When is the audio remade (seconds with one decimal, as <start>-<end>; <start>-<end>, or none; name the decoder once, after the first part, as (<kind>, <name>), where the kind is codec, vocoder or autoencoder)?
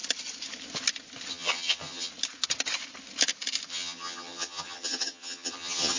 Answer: 1.3-2.1 (vocoder, HiFi-GAN); 3.7-6.0